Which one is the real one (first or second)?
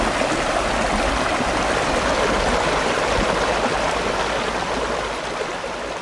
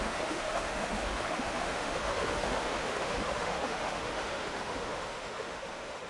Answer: first